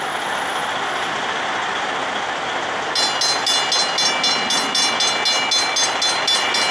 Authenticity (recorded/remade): recorded